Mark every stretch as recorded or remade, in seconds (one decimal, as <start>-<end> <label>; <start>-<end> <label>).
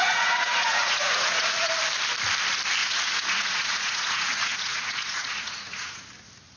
0.0-1.7 remade; 1.7-2.8 recorded; 2.8-6.1 remade; 6.1-6.6 recorded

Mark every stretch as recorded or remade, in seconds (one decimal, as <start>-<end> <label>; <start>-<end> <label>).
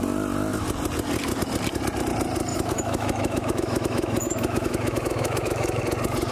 0.0-2.5 recorded; 2.5-5.8 remade; 5.8-6.3 recorded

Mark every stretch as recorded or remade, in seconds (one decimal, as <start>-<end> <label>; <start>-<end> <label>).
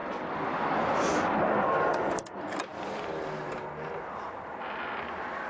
0.0-5.5 recorded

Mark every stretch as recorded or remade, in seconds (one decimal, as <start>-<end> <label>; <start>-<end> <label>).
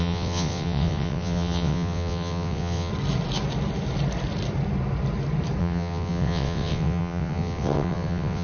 0.0-2.9 remade; 2.9-5.6 recorded; 5.6-8.4 remade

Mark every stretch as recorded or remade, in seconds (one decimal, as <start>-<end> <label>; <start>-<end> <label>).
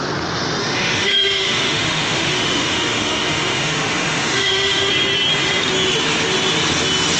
0.0-0.6 recorded; 0.6-4.9 remade; 4.9-7.2 recorded